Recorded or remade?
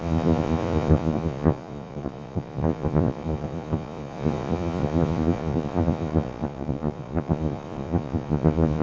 remade